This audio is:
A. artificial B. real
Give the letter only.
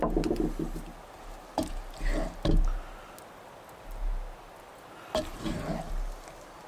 B